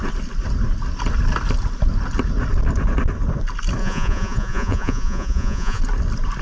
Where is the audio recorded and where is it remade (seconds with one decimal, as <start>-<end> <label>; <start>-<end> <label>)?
0.0-3.8 recorded; 3.8-5.8 remade; 5.8-6.4 recorded